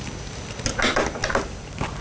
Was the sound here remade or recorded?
recorded